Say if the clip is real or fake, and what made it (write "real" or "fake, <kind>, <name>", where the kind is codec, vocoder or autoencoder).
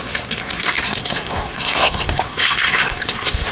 fake, codec, SNAC